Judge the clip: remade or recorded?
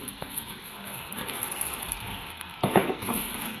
remade